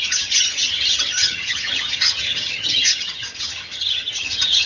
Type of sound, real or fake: fake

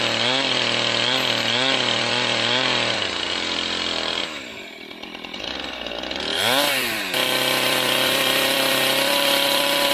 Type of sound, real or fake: fake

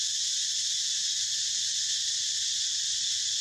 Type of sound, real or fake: real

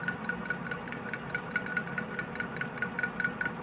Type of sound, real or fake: real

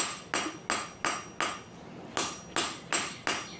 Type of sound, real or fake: real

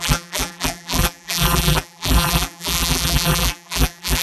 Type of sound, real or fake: fake